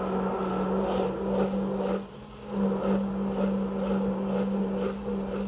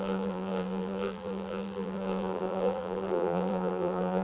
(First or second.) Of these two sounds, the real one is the first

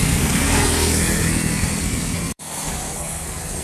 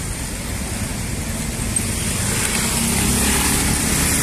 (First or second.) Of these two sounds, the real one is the second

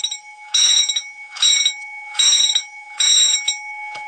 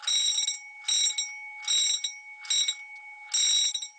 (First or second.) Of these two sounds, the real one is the second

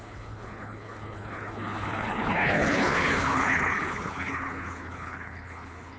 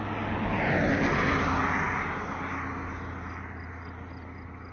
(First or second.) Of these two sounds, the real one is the second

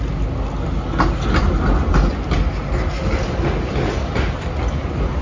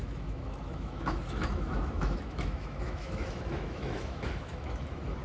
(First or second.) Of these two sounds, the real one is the first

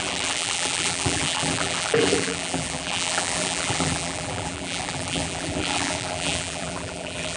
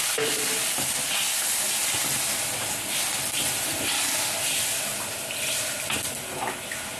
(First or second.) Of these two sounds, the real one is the second